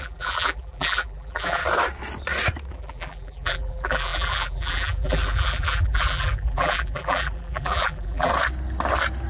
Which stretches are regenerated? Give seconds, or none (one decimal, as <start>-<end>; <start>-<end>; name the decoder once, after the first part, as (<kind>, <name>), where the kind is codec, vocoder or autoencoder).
0.0-1.6 (vocoder, BigVGAN v2); 2.7-8.3